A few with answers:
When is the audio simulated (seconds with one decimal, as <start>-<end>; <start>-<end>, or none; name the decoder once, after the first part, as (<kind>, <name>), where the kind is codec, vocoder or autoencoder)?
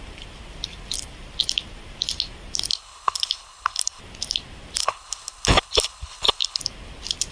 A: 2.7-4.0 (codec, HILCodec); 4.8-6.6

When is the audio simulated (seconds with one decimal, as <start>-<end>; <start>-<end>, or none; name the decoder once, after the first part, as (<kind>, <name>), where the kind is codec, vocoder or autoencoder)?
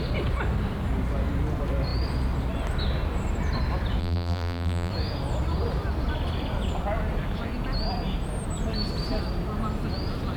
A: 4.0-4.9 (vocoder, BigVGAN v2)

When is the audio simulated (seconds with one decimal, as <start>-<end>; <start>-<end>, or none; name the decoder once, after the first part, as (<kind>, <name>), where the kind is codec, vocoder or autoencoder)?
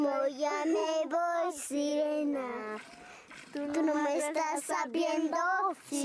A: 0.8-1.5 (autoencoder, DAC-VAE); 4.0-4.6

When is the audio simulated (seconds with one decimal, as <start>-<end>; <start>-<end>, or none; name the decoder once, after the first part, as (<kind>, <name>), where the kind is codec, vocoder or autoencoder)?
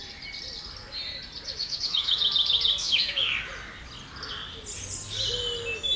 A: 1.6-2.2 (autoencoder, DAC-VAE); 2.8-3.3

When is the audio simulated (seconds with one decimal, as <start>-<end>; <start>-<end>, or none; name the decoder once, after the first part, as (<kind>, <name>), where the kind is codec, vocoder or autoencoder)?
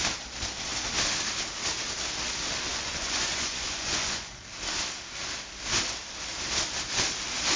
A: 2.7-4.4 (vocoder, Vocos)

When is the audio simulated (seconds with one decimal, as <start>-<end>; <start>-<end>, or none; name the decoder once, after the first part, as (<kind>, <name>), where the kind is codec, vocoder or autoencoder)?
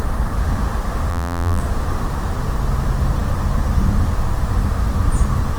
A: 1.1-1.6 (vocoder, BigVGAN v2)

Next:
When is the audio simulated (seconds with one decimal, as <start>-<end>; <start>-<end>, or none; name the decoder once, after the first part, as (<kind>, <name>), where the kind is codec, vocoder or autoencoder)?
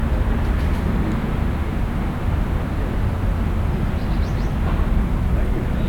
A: none